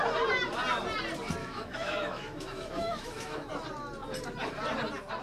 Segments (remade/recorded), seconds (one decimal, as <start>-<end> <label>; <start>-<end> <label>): 0.0-1.4 recorded; 1.4-3.5 remade; 3.5-5.2 recorded